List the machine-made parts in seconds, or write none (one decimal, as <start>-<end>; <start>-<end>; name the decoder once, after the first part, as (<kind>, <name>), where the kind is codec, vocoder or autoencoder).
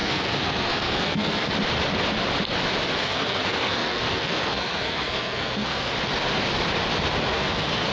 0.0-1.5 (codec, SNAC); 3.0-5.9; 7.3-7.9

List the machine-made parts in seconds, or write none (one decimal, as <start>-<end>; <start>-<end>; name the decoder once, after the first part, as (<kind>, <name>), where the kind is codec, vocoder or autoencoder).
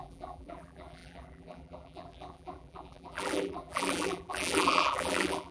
0.0-5.5 (vocoder, BigVGAN v2)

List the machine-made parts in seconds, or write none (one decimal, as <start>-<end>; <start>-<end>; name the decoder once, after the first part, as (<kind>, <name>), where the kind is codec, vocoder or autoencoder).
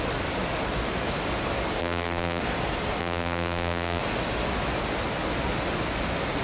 1.8-2.4 (vocoder, BigVGAN v2); 3.0-4.0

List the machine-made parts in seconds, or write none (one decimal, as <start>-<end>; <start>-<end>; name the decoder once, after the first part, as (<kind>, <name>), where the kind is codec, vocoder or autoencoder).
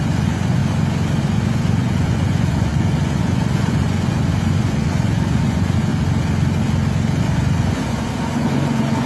0.0-0.6 (vocoder, Vocos); 1.2-5.9; 7.2-9.1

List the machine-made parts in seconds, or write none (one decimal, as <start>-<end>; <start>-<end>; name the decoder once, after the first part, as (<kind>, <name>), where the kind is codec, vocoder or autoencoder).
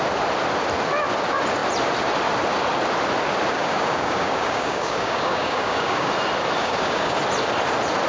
3.6-6.1 (codec, DAC); 6.6-7.2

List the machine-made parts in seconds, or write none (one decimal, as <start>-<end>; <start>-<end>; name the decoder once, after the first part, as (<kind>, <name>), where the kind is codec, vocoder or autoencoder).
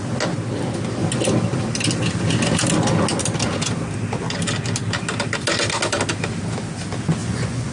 7.2-7.7 (vocoder, Vocos)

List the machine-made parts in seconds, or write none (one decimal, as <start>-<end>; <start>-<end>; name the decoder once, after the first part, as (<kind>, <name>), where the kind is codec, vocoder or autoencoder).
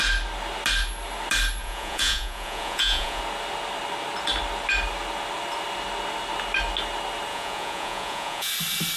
1.6-3.2 (vocoder, Vocos); 7.3-8.5